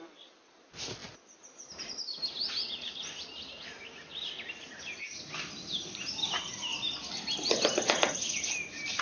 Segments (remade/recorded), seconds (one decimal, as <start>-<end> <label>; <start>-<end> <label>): 0.0-6.7 remade; 6.7-8.1 recorded; 8.1-9.0 remade